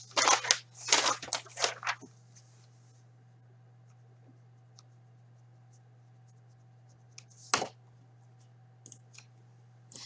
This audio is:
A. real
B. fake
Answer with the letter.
A